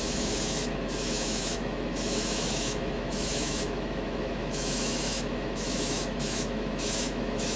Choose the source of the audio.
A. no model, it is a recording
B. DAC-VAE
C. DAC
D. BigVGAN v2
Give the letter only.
B